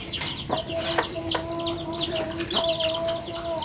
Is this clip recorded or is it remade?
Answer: recorded